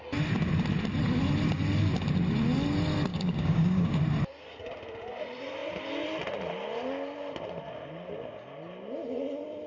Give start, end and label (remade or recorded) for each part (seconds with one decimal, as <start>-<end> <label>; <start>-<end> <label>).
0.0-3.1 recorded; 3.1-4.0 remade; 4.0-9.7 recorded